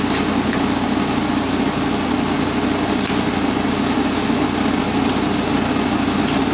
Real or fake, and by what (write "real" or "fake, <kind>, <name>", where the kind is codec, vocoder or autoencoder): real